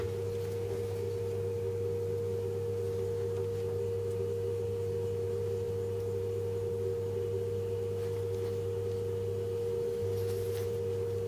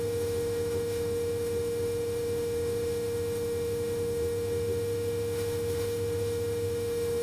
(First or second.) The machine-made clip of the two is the second